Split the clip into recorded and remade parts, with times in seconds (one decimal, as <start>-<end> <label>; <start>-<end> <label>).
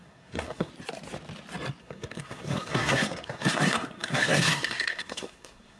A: 0.0-0.7 remade; 0.7-1.8 recorded; 1.8-5.8 remade